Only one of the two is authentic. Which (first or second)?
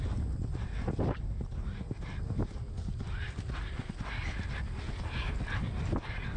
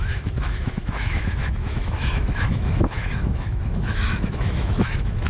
first